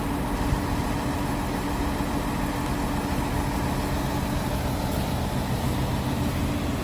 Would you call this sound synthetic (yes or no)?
no